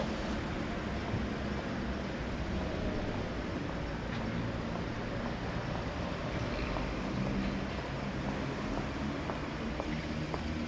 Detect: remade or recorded recorded